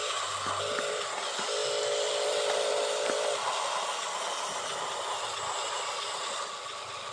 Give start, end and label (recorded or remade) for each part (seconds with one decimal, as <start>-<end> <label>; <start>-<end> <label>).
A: 0.0-7.1 recorded